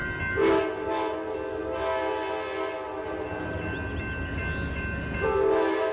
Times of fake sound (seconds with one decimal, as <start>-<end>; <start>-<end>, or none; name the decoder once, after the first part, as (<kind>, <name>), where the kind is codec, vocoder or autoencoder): none